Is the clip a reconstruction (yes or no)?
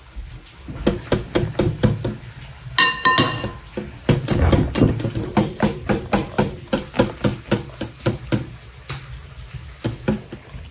no